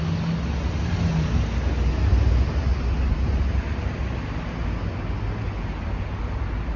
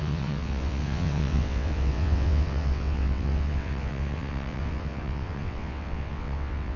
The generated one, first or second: second